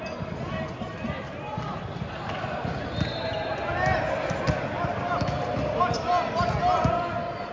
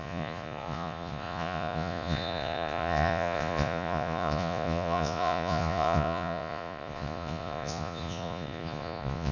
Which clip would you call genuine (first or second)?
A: first